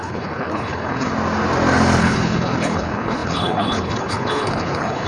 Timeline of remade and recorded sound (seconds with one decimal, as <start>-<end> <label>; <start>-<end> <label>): 0.0-1.1 remade; 1.1-2.0 recorded; 2.0-5.1 remade